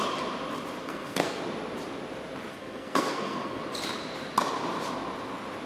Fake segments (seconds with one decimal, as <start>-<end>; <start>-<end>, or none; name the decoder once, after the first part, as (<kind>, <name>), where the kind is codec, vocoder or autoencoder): 0.8-1.4 (codec, SNAC); 2.5-3.6

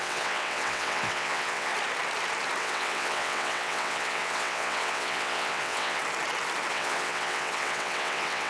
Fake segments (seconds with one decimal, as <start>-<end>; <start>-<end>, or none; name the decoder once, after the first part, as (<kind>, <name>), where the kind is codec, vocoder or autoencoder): 0.0-1.7 (vocoder, WaveNeXt); 2.6-6.0; 6.7-8.5